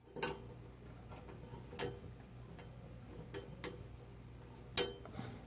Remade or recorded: recorded